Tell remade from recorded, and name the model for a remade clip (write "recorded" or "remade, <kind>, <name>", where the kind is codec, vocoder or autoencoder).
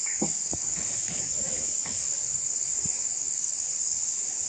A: remade, codec, DAC